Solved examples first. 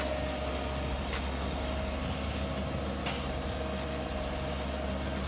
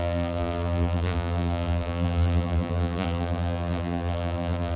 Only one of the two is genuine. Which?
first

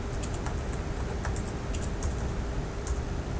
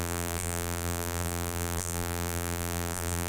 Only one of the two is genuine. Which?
first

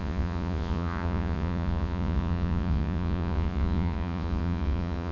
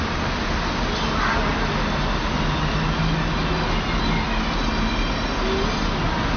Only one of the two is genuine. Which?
second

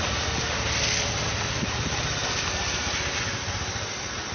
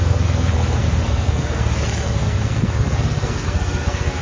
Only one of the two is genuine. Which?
first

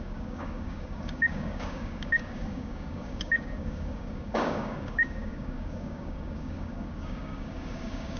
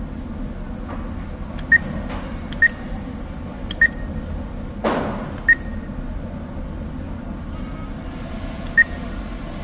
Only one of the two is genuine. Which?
second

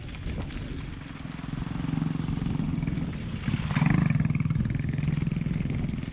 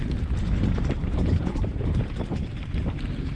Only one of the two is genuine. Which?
first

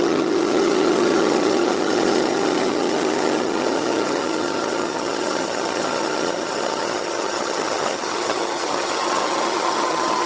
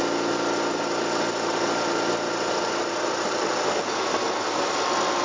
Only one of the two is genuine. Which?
second